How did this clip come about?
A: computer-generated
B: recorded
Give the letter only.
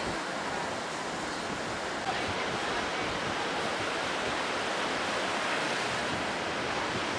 B